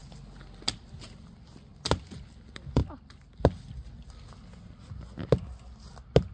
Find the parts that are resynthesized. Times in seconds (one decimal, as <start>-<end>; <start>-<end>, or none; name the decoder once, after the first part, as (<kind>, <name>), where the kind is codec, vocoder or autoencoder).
none